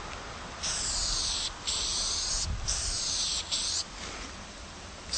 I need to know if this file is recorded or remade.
recorded